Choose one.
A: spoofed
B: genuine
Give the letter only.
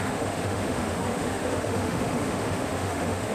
A